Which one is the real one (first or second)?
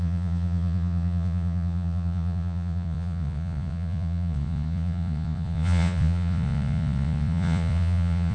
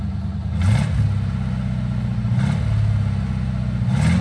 second